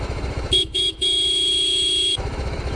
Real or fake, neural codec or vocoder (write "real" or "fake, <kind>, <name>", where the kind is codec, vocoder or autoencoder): fake, autoencoder, DAC-VAE